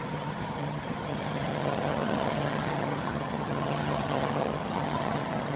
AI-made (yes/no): yes